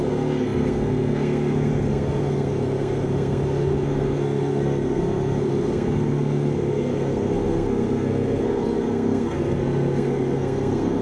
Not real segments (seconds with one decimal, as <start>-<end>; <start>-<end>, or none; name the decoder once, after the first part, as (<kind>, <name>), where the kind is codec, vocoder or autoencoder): 0.0-11.0 (codec, SNAC)